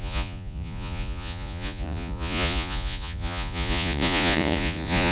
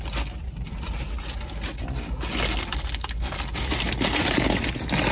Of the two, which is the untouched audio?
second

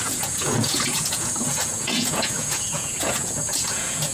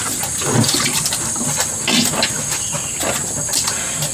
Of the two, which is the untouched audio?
second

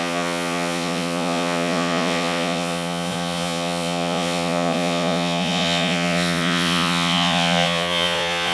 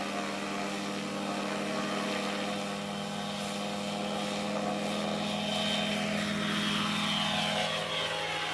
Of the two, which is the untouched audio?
second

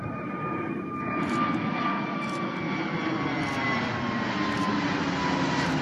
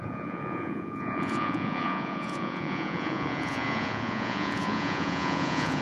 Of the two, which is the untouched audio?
first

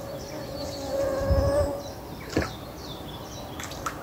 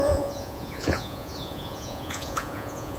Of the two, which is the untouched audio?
first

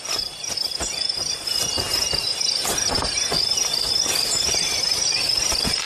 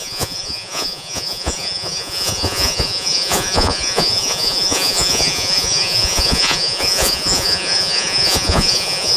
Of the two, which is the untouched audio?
first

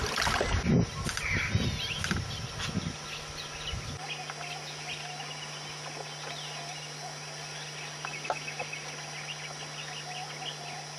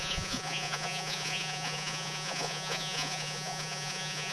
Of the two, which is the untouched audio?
first